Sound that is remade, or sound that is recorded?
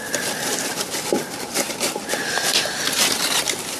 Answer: remade